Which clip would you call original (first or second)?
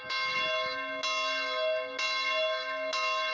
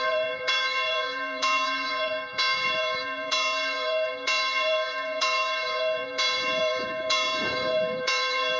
first